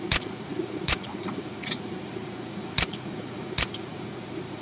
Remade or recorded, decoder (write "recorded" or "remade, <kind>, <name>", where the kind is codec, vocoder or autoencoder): remade, vocoder, Vocos